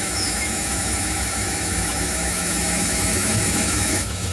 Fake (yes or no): yes